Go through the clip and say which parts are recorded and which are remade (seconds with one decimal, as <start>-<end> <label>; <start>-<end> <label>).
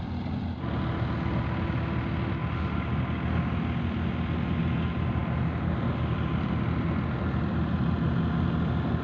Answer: 0.0-9.0 recorded